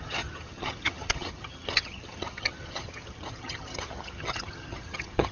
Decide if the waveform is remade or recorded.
remade